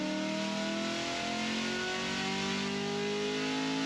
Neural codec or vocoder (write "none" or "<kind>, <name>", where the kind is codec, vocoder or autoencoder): none